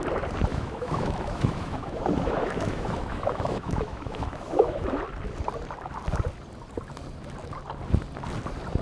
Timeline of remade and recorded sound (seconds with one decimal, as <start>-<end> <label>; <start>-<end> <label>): 0.0-0.5 recorded; 0.5-5.0 remade; 5.0-8.8 recorded